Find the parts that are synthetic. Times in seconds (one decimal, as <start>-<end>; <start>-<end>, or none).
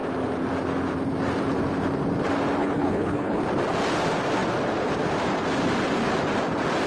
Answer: 2.6-3.4